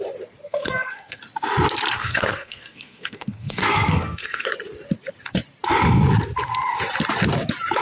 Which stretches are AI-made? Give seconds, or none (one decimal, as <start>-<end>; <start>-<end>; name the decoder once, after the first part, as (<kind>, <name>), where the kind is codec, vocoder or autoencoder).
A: 0.4-1.2 (codec, SNAC); 2.0-4.5

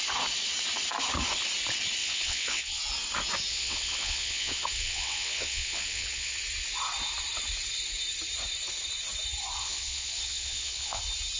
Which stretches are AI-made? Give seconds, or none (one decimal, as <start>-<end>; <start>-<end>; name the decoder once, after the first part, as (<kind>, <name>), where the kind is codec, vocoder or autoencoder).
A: 2.0-2.8 (vocoder, WaveNeXt); 3.5-6.4; 9.6-11.0

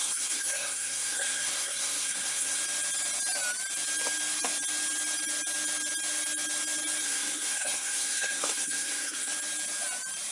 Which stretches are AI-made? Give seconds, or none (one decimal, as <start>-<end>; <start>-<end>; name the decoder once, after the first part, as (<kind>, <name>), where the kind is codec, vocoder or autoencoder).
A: 0.0-2.6 (codec, SNAC); 7.0-9.3

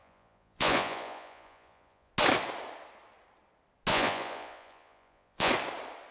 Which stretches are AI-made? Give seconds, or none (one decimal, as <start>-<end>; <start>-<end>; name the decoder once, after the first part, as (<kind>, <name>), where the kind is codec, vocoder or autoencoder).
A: 0.0-2.1 (vocoder, Vocos); 3.9-5.5